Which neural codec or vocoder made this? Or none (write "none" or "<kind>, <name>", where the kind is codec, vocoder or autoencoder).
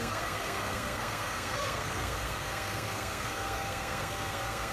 codec, SNAC